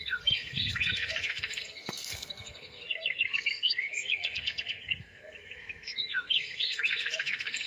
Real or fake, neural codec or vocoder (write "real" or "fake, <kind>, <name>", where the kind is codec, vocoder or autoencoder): fake, codec, SNAC